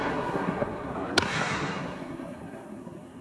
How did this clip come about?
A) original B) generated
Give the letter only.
B